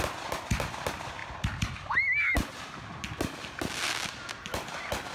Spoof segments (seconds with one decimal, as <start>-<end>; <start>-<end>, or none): none